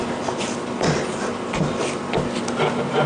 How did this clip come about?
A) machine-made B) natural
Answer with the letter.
B